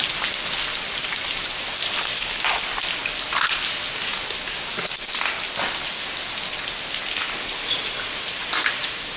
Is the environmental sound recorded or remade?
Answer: recorded